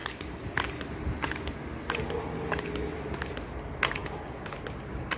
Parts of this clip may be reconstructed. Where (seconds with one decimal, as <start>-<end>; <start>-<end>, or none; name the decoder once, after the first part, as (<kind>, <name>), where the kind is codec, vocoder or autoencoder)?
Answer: none